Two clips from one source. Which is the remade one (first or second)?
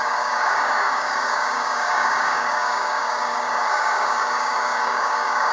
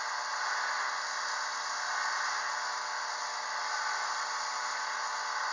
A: first